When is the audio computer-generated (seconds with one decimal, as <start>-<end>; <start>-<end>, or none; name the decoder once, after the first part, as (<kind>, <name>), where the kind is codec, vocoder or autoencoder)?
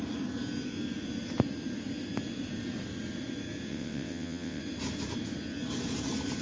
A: 3.7-4.6 (vocoder, WaveNeXt)